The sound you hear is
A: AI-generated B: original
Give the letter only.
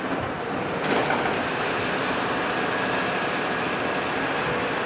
A